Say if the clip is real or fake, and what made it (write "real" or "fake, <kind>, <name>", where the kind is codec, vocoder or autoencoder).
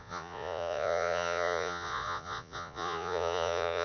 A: fake, vocoder, Vocos